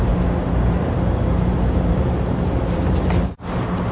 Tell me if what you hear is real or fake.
fake